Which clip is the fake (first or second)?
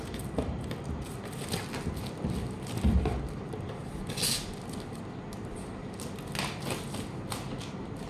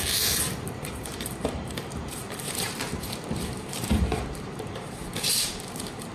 second